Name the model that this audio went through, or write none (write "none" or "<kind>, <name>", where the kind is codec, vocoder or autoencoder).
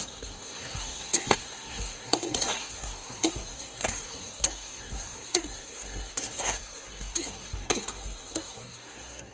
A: codec, SNAC